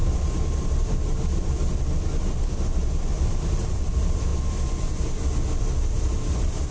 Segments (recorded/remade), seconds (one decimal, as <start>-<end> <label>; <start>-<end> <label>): 0.0-3.2 recorded; 3.2-4.3 remade; 4.3-5.6 recorded; 5.6-6.7 remade